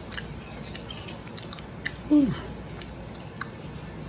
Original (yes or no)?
yes